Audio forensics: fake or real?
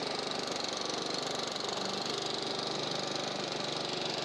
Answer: real